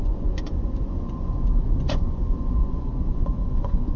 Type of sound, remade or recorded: remade